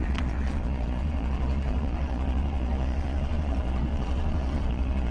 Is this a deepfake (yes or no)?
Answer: yes